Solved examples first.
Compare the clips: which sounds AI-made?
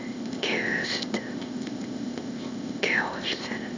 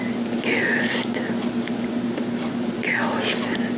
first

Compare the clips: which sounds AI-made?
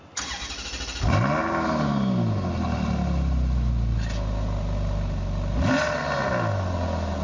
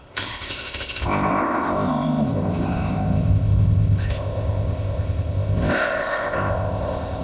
second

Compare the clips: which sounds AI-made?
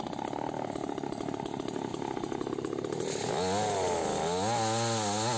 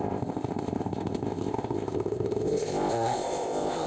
second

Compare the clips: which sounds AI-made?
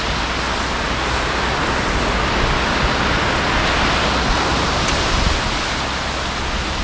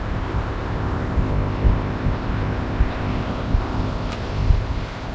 second